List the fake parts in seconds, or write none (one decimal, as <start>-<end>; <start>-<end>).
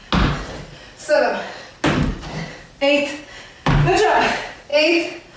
none